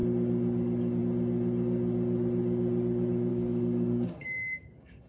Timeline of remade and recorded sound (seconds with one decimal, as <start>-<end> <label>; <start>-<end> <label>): 0.0-3.3 recorded; 3.3-5.1 remade